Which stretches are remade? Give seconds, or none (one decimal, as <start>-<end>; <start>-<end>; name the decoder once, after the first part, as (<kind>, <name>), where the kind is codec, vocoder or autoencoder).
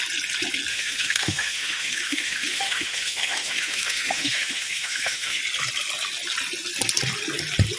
0.7-5.4 (autoencoder, DAC-VAE)